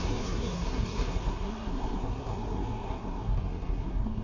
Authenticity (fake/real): fake